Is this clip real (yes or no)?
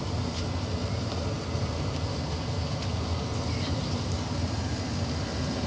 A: yes